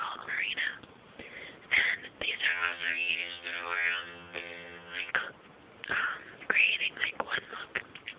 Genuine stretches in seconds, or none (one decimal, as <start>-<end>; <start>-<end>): 0.0-2.5; 5.1-8.2